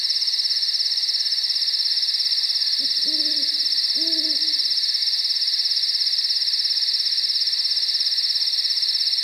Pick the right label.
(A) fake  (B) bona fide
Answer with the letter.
B